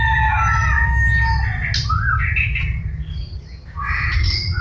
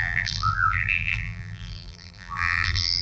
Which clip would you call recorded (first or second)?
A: first